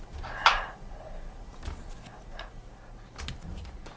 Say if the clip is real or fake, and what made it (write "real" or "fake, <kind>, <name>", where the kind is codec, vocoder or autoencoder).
real